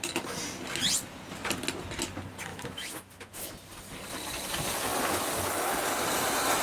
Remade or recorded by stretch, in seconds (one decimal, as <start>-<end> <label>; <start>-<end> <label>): 0.0-2.5 recorded; 2.5-3.5 remade; 3.5-6.6 recorded